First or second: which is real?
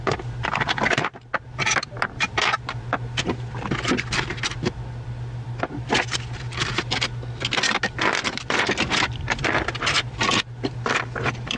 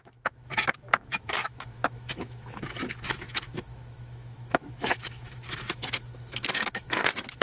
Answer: first